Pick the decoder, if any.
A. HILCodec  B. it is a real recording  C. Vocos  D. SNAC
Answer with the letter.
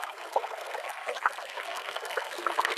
D